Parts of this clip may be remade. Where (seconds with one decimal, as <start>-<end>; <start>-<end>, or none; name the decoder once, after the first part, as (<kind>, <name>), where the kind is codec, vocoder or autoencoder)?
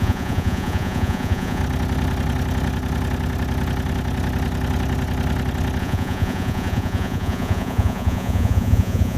0.0-1.6 (vocoder, Vocos); 5.8-9.2